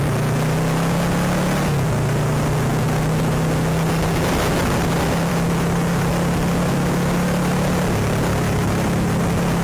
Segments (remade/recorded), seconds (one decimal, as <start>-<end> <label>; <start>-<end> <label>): 0.0-9.6 recorded